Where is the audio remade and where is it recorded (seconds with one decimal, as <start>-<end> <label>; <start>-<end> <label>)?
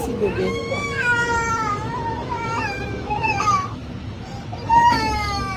0.0-3.8 remade; 3.8-4.9 recorded; 4.9-5.6 remade